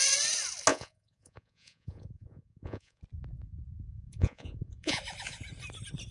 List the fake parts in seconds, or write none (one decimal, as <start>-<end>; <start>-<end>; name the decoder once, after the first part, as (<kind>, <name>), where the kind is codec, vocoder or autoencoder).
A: 0.7-3.0 (vocoder, Vocos); 3.9-5.0